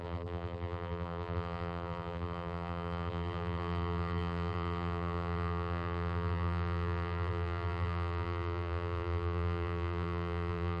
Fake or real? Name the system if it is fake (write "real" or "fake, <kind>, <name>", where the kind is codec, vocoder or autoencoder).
fake, vocoder, BigVGAN v2